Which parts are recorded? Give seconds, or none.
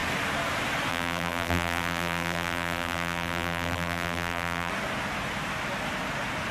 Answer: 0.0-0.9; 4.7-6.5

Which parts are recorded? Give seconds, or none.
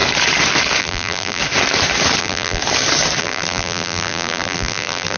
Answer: 0.0-0.8; 1.4-2.2; 2.6-3.2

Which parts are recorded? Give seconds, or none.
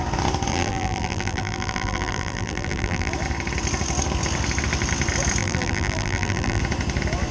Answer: 0.0-0.5; 3.1-5.4; 6.6-7.3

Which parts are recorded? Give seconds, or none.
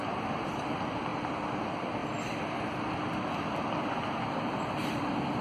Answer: 1.1-1.6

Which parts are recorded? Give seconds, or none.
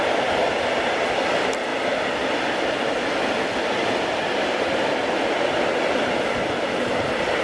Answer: 0.0-7.4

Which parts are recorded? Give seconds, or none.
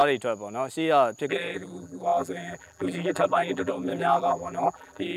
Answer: 0.0-1.3